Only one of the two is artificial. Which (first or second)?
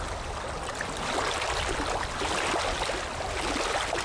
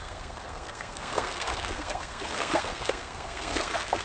second